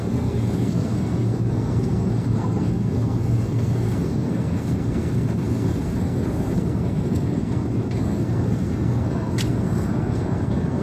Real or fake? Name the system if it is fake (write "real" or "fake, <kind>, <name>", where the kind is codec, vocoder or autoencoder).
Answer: fake, codec, SNAC